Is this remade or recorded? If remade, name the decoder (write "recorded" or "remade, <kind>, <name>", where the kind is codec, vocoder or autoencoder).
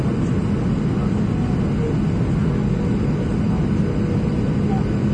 recorded